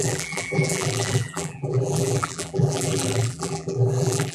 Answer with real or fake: fake